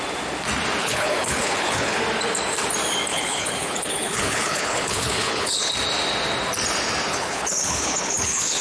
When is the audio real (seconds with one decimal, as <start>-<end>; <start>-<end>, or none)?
0.0-0.8; 2.0-3.1; 5.7-7.1